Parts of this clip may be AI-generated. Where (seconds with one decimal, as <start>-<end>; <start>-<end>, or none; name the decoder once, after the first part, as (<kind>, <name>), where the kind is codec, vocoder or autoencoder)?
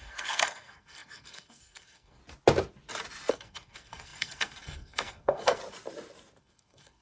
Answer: 0.0-2.2 (codec, SNAC); 3.3-5.6; 6.4-7.0